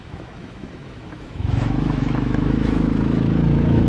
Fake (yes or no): yes